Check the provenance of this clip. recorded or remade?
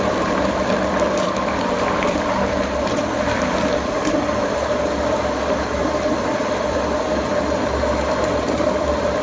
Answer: remade